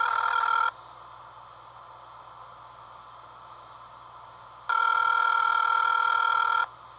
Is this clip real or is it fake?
real